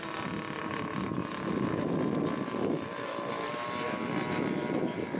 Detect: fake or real real